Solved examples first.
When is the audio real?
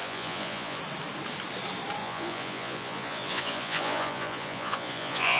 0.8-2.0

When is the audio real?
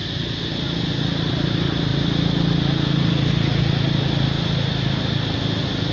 0.0-5.9